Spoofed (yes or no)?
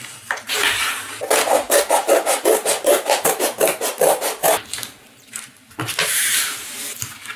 yes